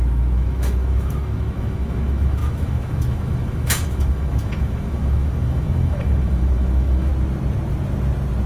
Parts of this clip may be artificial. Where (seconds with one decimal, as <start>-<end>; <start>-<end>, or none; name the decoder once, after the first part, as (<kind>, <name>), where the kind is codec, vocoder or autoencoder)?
0.0-7.1 (autoencoder, DAC-VAE)